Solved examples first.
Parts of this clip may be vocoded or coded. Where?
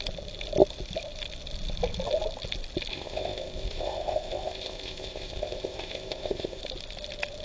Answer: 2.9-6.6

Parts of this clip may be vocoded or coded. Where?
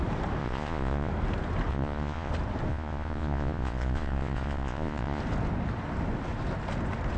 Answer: 0.4-1.1; 1.7-2.3; 2.7-5.2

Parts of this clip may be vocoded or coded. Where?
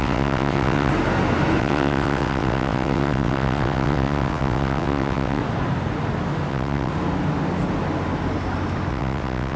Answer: 0.0-0.9; 1.6-5.4; 6.5-6.9; 8.9-9.6